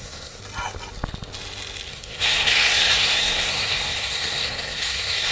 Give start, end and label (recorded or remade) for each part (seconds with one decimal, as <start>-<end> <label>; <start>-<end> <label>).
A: 0.0-0.4 remade; 0.4-1.9 recorded; 1.9-5.3 remade